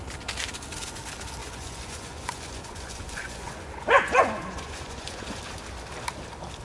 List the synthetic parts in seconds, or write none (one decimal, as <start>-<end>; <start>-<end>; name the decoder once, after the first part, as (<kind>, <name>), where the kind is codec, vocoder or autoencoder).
1.4-5.4 (vocoder, Vocos)